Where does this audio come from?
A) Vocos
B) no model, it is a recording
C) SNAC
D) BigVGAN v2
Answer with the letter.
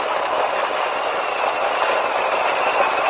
B